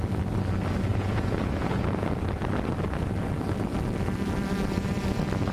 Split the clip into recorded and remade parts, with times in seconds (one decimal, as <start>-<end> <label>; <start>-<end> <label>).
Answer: 0.0-0.9 recorded; 0.9-2.2 remade; 2.2-5.5 recorded